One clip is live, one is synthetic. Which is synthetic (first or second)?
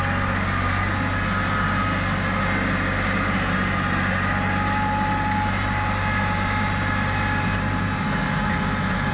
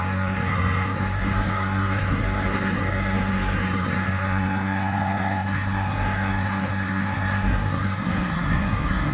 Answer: second